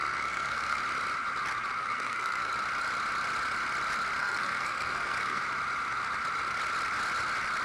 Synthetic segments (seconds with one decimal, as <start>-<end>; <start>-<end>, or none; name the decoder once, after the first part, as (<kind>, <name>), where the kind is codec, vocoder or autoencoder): 0.0-0.8 (codec, SNAC); 1.8-2.5; 4.2-5.4